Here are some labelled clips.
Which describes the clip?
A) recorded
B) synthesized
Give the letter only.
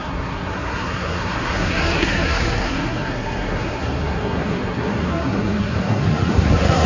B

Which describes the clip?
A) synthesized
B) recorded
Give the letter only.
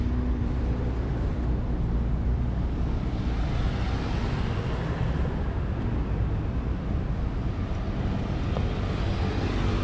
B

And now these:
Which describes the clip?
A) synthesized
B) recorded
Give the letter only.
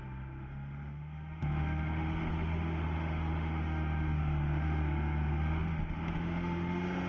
A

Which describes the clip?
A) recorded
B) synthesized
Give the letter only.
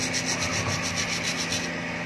A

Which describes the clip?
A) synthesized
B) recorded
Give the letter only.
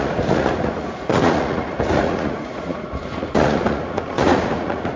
A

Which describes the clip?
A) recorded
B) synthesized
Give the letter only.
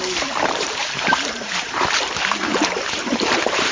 B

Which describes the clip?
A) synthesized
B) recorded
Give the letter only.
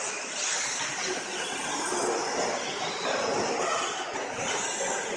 B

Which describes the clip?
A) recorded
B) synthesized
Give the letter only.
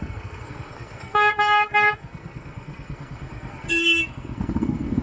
B